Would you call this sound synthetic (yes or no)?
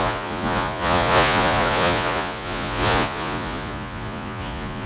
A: yes